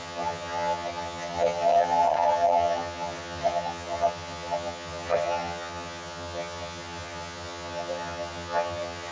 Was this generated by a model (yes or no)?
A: yes